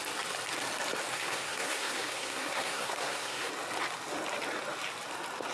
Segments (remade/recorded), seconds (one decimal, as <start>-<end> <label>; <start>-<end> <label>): 0.0-1.1 recorded; 1.1-3.5 remade; 3.5-5.5 recorded